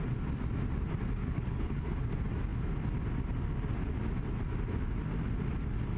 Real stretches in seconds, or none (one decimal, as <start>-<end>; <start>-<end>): 0.0-1.2; 2.0-6.0